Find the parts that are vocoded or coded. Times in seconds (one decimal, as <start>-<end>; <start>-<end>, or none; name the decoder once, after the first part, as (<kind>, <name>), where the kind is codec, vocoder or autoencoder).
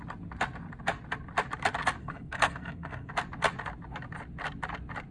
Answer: 2.0-3.1 (codec, SNAC)